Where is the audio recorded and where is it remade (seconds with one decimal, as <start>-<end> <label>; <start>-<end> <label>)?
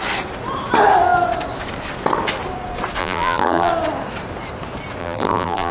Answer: 0.0-3.0 recorded; 3.0-3.7 remade; 3.7-5.0 recorded; 5.0-5.7 remade